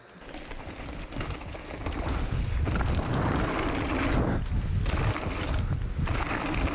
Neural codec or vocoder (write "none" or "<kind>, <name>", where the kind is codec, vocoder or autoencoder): none